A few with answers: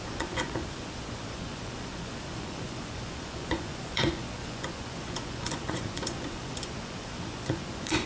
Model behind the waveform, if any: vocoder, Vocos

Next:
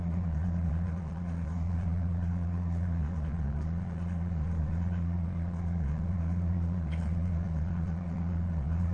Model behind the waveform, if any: vocoder, Vocos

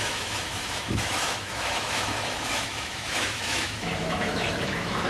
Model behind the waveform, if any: autoencoder, DAC-VAE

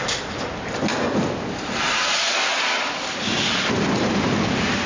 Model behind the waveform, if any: none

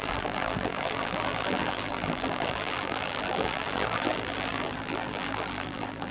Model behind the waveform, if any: vocoder, BigVGAN v2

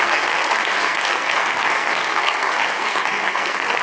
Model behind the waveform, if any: codec, SNAC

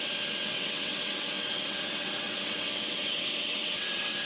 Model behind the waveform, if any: vocoder, WaveNeXt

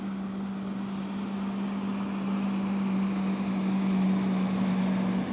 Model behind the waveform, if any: none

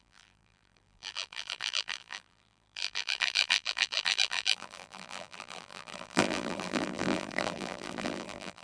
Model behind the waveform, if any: vocoder, BigVGAN v2